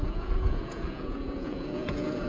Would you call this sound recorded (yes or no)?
no